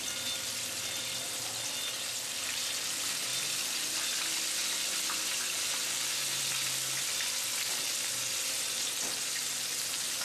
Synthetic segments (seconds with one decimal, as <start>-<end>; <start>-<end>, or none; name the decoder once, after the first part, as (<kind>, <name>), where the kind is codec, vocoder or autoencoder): none